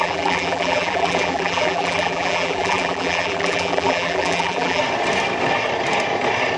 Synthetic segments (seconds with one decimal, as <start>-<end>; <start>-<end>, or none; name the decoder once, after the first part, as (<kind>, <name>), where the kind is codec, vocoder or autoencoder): 0.0-4.8 (vocoder, BigVGAN v2)